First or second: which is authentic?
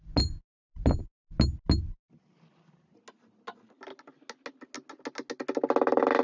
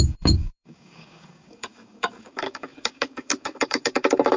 first